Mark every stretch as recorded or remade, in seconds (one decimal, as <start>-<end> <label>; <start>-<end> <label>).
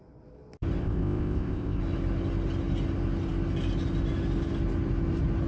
0.0-0.8 recorded; 0.8-1.8 remade; 1.8-5.5 recorded